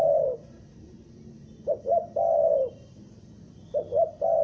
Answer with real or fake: real